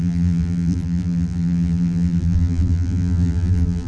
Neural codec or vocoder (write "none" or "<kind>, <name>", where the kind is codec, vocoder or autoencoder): vocoder, BigVGAN v2